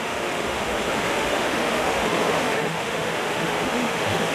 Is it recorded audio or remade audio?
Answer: remade